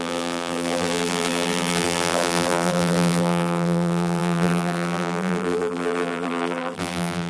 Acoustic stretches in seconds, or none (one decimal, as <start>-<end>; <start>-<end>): none